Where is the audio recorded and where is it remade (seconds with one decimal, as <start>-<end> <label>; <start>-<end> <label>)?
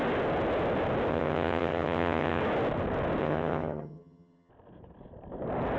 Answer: 0.0-1.1 recorded; 1.1-2.4 remade; 2.4-3.2 recorded; 3.2-4.5 remade; 4.5-5.8 recorded